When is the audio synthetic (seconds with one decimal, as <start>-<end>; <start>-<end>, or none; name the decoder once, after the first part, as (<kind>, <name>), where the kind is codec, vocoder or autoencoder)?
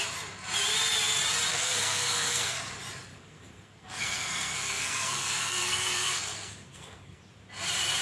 1.5-2.7 (codec, SNAC); 3.1-7.2